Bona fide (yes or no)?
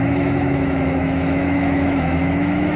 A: no